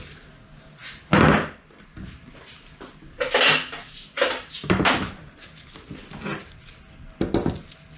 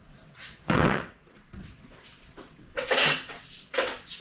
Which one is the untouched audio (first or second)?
first